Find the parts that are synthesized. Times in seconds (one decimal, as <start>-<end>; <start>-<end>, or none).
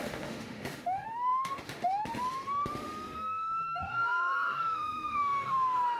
0.0-6.0